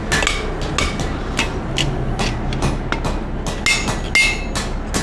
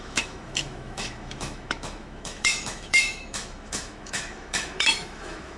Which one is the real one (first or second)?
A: first